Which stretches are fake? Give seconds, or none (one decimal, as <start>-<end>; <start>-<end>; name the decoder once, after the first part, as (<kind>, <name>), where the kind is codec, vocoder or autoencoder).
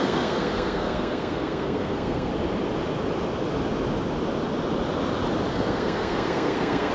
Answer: 0.0-2.3 (codec, SNAC); 5.5-6.9